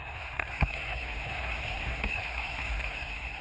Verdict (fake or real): fake